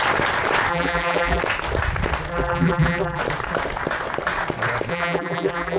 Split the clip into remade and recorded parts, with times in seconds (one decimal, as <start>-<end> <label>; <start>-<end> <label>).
0.0-0.7 recorded; 0.7-1.4 remade; 1.4-2.3 recorded; 2.3-3.2 remade; 3.2-4.9 recorded; 4.9-5.8 remade